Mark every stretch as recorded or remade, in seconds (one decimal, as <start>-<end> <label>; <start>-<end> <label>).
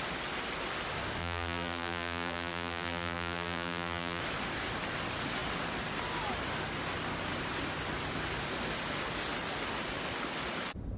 0.0-1.2 recorded; 1.2-4.2 remade; 4.2-11.0 recorded